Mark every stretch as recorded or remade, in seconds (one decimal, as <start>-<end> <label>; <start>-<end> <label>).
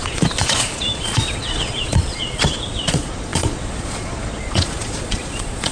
0.0-5.7 remade